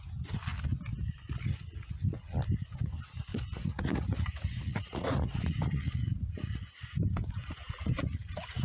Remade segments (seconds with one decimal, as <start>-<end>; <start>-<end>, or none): 3.3-8.6